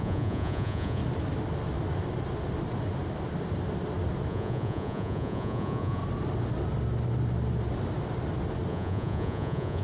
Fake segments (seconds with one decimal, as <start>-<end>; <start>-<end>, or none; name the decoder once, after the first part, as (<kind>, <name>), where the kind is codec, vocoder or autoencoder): 0.0-1.0 (vocoder, Vocos); 4.3-6.0; 8.7-9.8